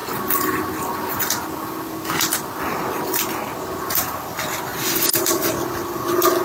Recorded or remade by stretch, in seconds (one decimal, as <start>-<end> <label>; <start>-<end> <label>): 0.0-4.7 recorded; 4.7-5.5 remade; 5.5-6.4 recorded